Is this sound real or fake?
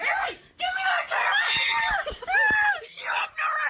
real